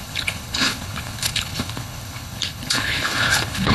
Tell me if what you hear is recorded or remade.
remade